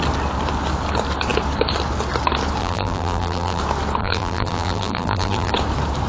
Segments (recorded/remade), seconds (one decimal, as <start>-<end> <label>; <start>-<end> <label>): 0.0-2.6 recorded; 2.6-3.6 remade; 3.6-4.0 recorded; 4.0-5.5 remade; 5.5-6.1 recorded